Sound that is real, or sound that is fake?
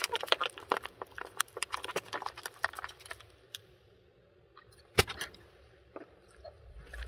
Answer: fake